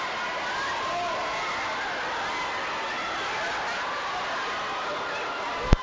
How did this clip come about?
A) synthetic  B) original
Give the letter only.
B